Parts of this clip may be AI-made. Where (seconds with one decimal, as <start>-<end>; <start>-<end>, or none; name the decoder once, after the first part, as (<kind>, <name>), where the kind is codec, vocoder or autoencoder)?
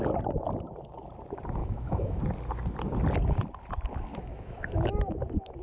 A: 1.6-2.2 (autoencoder, DAC-VAE); 4.1-5.1